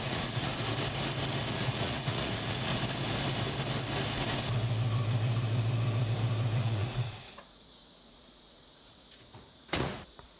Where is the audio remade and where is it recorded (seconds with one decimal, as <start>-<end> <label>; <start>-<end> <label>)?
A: 0.0-0.5 remade; 0.5-1.5 recorded; 1.5-2.7 remade; 2.7-6.6 recorded; 6.6-10.4 remade